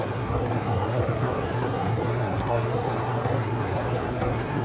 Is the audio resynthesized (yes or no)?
yes